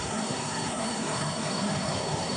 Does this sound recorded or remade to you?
remade